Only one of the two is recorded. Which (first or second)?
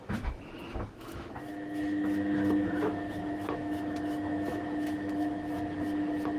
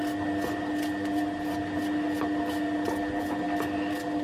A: second